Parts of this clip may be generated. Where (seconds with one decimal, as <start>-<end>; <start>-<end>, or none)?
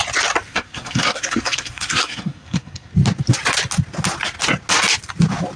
0.5-2.9